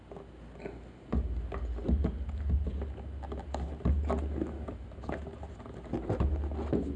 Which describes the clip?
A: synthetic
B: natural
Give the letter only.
B